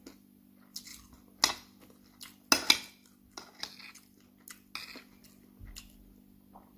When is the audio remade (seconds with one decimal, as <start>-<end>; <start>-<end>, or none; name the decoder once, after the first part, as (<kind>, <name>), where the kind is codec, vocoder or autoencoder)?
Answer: none